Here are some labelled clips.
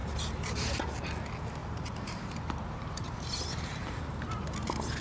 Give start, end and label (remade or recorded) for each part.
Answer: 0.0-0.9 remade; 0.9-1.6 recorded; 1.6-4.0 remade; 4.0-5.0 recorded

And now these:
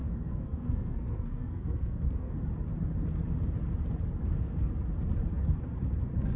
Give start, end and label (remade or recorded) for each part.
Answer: 0.0-2.3 remade; 2.3-4.2 recorded; 4.2-4.7 remade; 4.7-6.4 recorded